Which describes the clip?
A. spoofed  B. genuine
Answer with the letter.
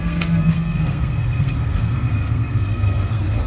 A